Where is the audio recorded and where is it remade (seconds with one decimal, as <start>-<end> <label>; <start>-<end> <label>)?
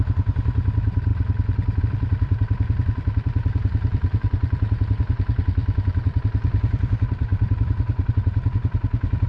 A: 0.0-1.1 remade; 1.1-1.8 recorded; 1.8-9.3 remade